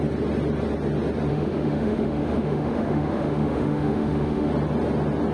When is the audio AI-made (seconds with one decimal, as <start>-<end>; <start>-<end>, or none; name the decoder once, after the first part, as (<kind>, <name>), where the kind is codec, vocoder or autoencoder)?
1.3-4.5 (autoencoder, DAC-VAE)